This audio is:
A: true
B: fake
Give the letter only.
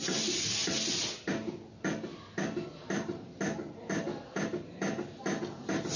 A